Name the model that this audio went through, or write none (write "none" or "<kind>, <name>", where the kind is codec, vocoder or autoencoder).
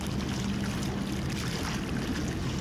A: none